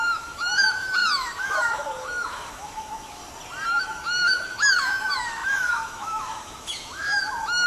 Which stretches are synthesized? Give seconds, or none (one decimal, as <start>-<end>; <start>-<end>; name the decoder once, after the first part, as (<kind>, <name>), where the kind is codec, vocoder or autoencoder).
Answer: 0.0-3.2 (autoencoder, DAC-VAE); 3.7-7.7